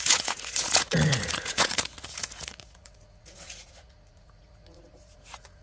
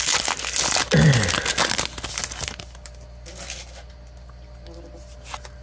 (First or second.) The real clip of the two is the second